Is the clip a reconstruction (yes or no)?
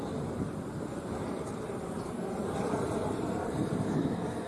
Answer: yes